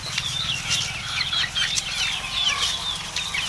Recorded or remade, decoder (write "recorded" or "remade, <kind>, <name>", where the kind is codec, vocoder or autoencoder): recorded